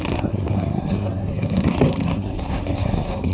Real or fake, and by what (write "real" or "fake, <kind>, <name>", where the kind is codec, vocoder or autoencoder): fake, codec, SNAC